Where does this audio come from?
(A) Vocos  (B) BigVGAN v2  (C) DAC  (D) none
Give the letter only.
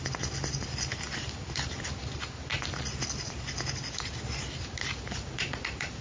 D